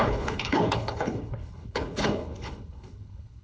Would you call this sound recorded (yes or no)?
no